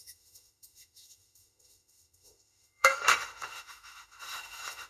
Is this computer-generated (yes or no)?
yes